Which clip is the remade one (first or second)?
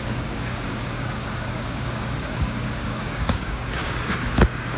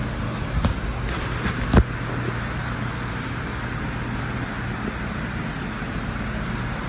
first